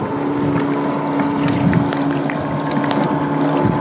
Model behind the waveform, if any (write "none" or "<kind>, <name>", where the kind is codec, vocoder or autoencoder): none